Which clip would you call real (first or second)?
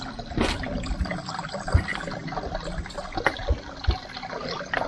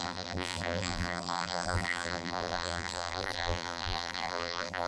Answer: first